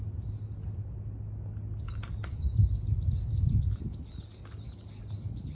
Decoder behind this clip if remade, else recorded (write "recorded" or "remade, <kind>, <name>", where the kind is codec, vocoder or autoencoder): recorded